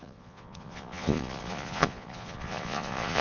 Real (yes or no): no